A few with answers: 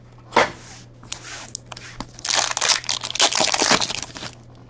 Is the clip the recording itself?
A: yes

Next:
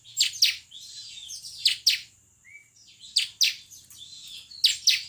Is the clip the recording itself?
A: yes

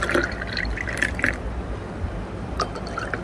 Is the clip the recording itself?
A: no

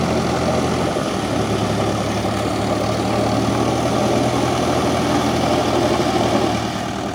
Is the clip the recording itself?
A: yes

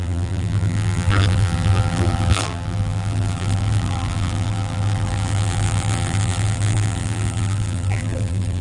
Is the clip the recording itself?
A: no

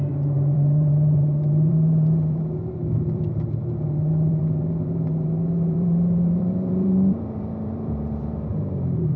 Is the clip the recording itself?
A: no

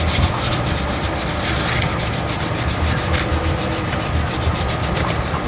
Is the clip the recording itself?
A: no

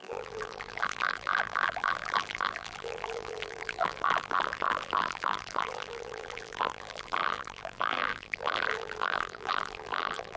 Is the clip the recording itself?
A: no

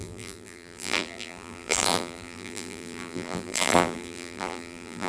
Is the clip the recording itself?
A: no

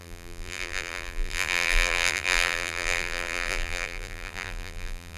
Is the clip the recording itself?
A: no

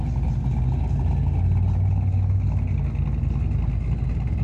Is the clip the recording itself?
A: yes